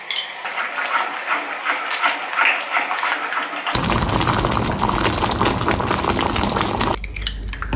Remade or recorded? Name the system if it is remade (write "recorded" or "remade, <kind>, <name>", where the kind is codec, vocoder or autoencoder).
recorded